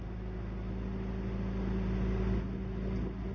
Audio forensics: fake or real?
real